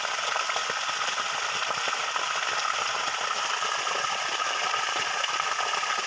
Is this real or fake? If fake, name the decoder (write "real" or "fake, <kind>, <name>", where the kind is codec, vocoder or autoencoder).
real